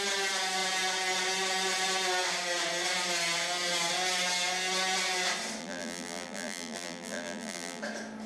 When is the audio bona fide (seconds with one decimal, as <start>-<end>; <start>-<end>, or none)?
0.0-5.6; 7.8-8.3